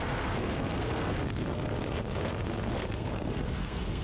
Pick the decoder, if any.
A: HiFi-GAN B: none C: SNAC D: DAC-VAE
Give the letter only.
C